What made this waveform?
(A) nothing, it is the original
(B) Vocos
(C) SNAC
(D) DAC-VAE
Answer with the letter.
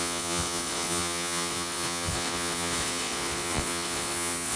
B